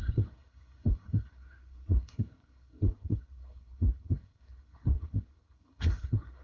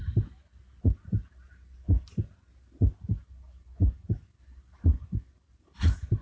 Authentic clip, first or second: second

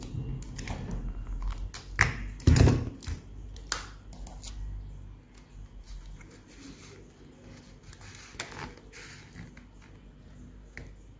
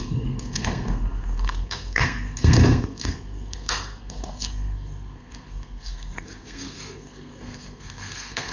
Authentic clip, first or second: first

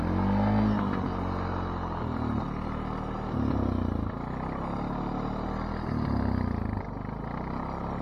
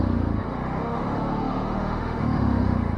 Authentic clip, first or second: first